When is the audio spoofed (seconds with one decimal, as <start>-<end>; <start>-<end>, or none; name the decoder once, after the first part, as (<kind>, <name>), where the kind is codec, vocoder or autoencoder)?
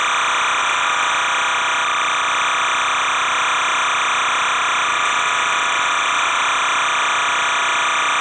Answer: 0.6-1.1 (vocoder, WaveNeXt); 4.9-6.4